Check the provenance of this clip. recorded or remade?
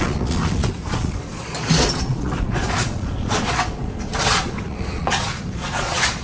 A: remade